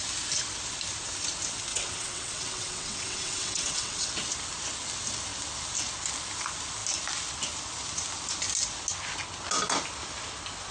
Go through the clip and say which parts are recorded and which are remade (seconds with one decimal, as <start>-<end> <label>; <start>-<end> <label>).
0.0-1.7 recorded; 1.7-4.1 remade; 4.1-10.7 recorded